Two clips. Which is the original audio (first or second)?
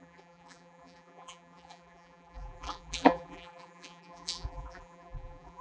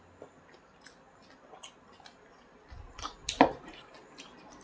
second